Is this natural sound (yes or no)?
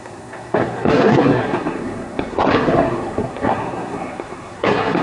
no